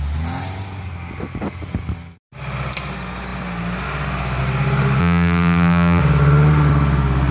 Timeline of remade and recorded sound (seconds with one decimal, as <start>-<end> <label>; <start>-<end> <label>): 0.0-5.0 recorded; 5.0-6.0 remade; 6.0-7.3 recorded